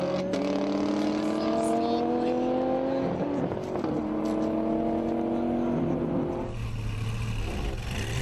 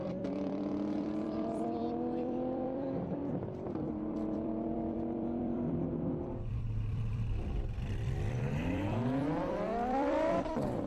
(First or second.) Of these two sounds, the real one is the first